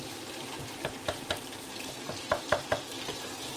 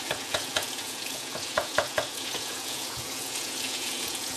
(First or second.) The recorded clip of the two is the first